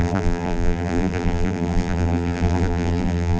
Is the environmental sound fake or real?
fake